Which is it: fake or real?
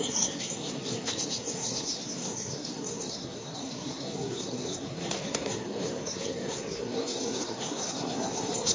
fake